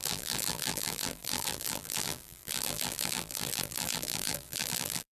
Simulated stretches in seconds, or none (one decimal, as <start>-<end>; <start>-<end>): 0.0-5.2